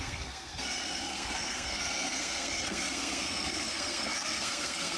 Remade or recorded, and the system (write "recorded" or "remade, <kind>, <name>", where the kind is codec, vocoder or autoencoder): remade, codec, SNAC